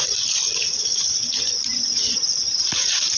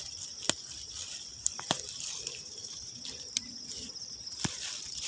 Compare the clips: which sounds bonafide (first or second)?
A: second